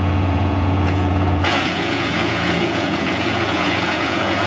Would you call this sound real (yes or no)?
no